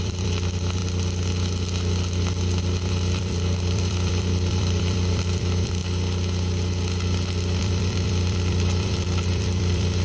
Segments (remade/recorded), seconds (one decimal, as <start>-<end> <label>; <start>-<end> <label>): 0.0-0.8 remade; 0.8-2.9 recorded; 2.9-5.8 remade; 5.8-7.6 recorded; 7.6-10.0 remade